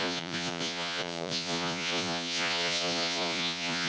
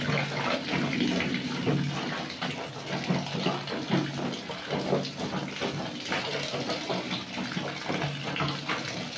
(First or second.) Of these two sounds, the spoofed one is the first